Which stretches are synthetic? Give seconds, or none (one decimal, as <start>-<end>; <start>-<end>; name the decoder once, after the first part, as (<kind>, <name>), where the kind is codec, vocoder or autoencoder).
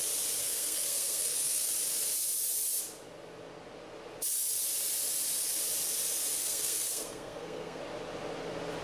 0.4-1.7 (codec, SNAC); 6.4-7.8